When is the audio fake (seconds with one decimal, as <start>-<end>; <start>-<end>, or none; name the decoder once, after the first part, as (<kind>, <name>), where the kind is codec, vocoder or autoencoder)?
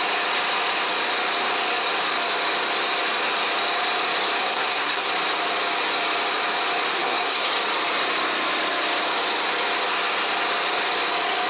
4.4-5.1 (codec, SNAC); 6.9-7.5